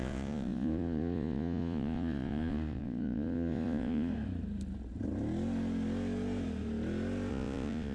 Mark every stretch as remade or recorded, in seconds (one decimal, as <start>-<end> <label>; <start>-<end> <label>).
0.0-4.1 remade; 4.1-7.3 recorded; 7.3-7.9 remade

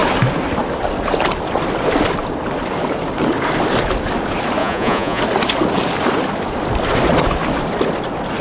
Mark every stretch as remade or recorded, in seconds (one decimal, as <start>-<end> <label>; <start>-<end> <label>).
0.0-4.6 recorded; 4.6-5.2 remade; 5.2-8.4 recorded

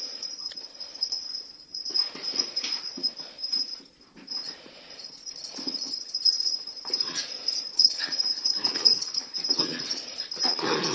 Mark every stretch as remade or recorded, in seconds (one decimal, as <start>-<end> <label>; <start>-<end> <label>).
0.0-10.9 remade

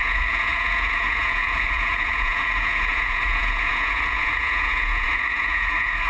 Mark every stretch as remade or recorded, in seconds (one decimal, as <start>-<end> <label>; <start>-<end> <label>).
0.0-6.1 remade

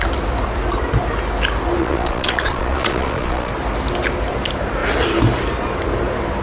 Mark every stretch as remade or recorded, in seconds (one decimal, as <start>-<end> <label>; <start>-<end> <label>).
0.0-1.8 recorded; 1.8-3.5 remade; 3.5-6.4 recorded

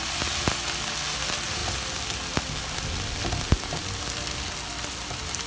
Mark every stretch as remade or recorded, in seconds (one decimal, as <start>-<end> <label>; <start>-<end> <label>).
0.0-5.5 recorded

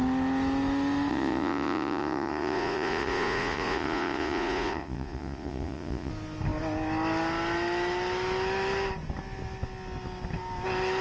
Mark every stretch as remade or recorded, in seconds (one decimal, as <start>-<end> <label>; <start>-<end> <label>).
0.0-1.1 recorded; 1.1-6.1 remade; 6.1-11.0 recorded